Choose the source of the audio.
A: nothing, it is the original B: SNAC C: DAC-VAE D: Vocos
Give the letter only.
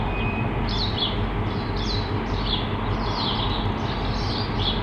A